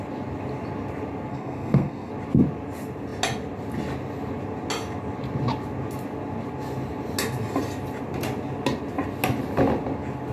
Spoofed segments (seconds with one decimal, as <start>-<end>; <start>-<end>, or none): 1.3-2.1